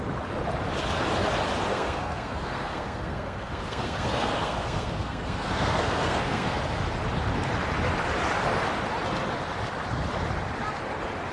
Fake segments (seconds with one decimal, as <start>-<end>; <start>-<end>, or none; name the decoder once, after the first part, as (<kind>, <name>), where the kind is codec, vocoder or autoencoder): 1.7-6.6 (codec, SNAC)